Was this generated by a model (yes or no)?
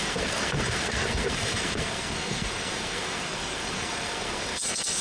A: yes